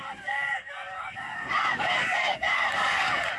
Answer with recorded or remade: remade